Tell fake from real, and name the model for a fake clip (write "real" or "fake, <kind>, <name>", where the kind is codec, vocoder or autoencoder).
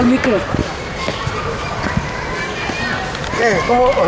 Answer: real